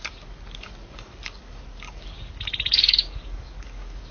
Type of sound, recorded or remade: remade